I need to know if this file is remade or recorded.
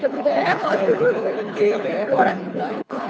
remade